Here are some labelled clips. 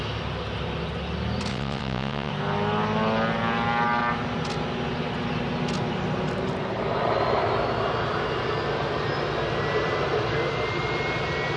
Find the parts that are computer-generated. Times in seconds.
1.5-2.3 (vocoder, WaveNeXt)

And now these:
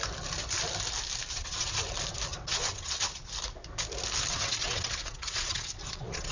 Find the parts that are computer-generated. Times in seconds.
1.3-1.8 (vocoder, WaveNeXt); 2.3-3.3; 4.3-6.3

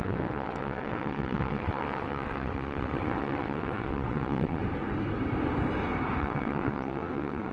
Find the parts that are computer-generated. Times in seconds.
0.0-4.6 (vocoder, WaveNeXt); 6.2-7.5

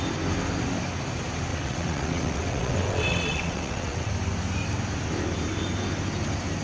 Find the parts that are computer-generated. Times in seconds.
1.5-4.1 (vocoder, WaveNeXt)

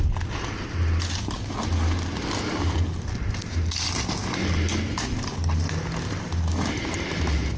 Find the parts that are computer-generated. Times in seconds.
none

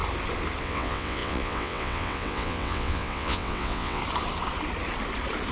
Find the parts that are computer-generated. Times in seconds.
0.6-4.0 (vocoder, WaveNeXt)

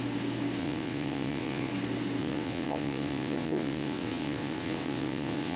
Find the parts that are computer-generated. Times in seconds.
0.6-1.7 (vocoder, WaveNeXt); 2.2-5.6